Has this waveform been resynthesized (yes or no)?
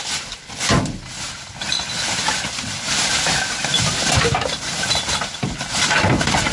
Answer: no